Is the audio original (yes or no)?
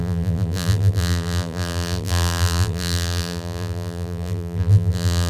no